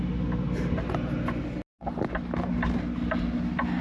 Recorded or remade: recorded